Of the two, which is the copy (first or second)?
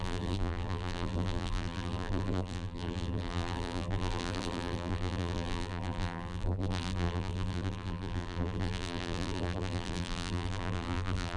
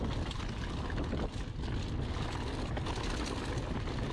first